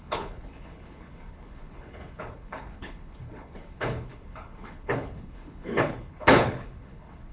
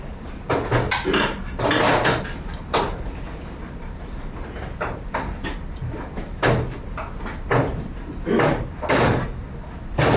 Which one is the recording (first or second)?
second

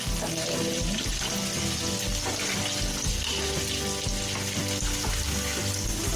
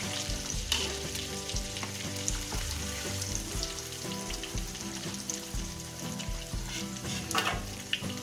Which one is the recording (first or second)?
first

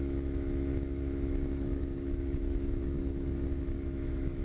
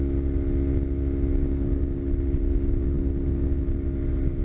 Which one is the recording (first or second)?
second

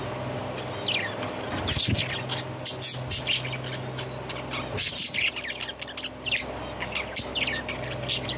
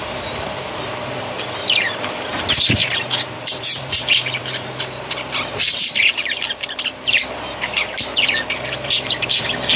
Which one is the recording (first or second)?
first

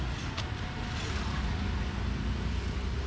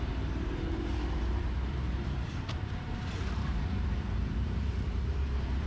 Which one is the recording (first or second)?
first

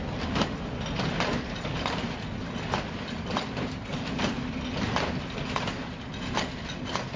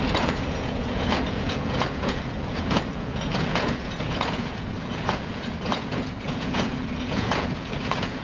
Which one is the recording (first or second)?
first